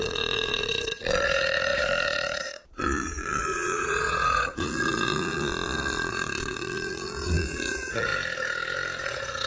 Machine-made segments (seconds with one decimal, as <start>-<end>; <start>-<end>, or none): 0.0-8.1; 9.0-9.5